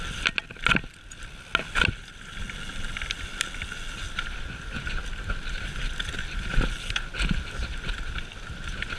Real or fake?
real